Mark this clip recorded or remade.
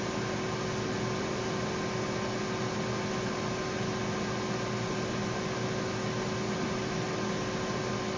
recorded